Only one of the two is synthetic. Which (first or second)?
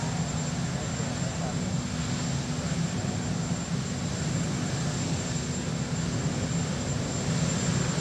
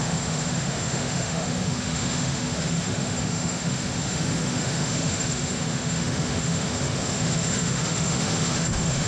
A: second